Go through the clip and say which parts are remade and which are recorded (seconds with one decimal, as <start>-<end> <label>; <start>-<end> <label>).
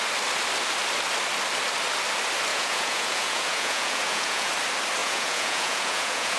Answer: 0.0-2.5 recorded; 2.5-4.5 remade; 4.5-5.0 recorded; 5.0-6.4 remade